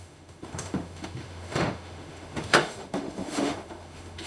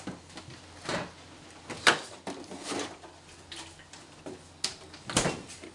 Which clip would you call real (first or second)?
second